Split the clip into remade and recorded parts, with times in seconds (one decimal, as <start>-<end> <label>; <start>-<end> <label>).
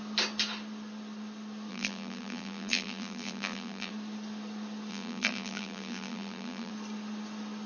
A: 0.0-1.7 recorded; 1.7-3.9 remade; 3.9-4.9 recorded; 4.9-6.7 remade; 6.7-7.7 recorded